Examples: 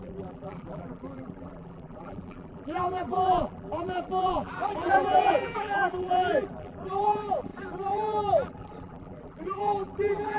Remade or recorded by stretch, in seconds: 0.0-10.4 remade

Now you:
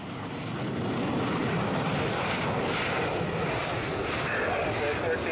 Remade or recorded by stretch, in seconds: 0.0-1.4 recorded; 1.4-2.6 remade; 2.6-5.3 recorded